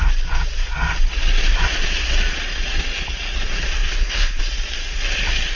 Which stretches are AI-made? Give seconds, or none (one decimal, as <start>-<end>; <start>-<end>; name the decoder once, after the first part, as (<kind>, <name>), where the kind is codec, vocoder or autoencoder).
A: 3.8-4.4 (vocoder, Vocos)